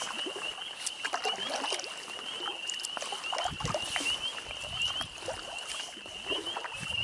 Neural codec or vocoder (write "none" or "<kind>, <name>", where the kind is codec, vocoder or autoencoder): none